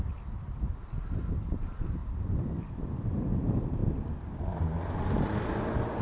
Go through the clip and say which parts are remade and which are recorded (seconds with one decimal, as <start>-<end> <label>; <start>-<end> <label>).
0.0-2.0 remade; 2.0-2.6 recorded; 2.6-3.8 remade; 3.8-4.4 recorded; 4.4-6.0 remade